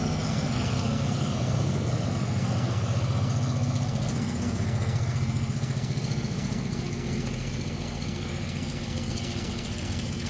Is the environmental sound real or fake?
fake